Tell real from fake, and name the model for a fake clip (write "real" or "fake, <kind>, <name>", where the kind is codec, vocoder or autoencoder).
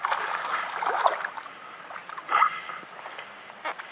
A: real